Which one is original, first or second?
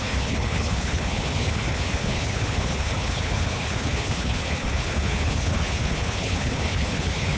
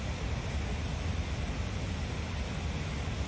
second